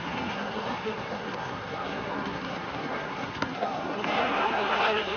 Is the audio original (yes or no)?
no